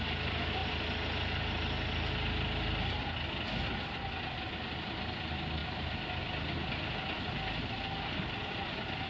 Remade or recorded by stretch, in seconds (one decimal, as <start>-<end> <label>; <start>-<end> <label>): 0.0-9.1 recorded